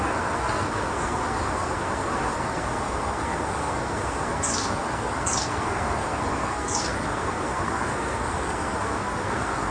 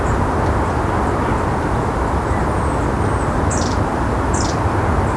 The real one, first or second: second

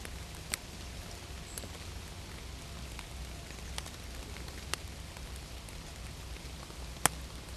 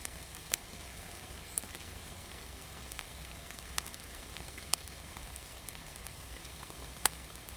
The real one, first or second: first